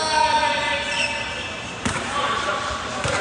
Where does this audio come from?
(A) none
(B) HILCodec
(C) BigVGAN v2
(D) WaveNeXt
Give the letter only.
A